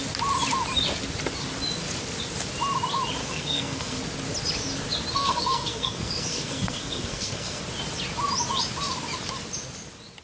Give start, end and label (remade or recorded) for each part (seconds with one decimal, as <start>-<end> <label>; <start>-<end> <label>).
0.0-3.2 recorded; 3.2-4.0 remade; 4.0-5.1 recorded; 5.1-7.6 remade; 7.6-10.2 recorded